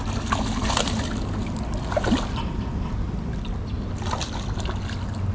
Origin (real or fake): real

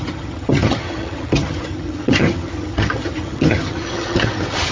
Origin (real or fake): fake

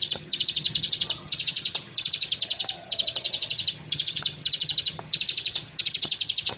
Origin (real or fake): fake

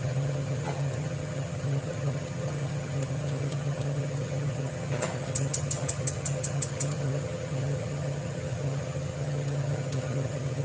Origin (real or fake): fake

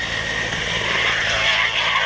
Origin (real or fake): real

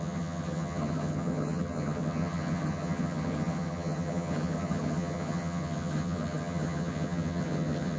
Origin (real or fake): fake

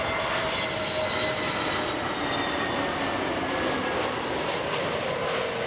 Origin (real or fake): real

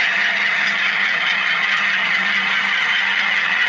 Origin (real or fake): fake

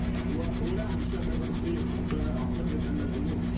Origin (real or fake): real